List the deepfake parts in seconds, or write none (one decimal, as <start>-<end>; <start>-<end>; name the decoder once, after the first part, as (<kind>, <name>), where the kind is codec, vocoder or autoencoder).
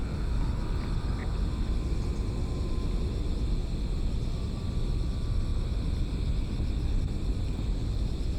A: 0.0-0.6 (codec, DAC)